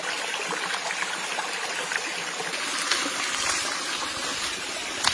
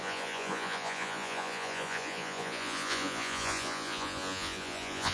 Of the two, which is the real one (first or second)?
first